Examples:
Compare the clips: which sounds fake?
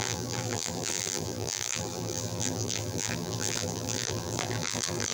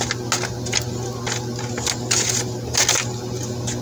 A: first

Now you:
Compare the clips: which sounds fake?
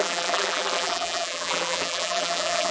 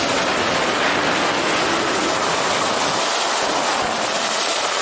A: first